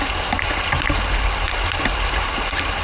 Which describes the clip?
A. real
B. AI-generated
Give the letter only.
A